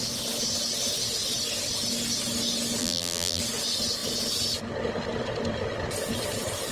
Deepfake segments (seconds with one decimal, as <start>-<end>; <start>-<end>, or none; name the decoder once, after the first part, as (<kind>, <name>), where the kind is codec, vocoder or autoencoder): 2.8-3.4 (vocoder, BigVGAN v2)